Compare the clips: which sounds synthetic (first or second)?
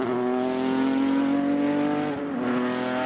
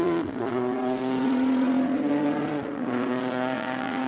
second